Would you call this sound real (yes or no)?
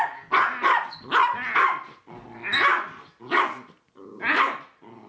yes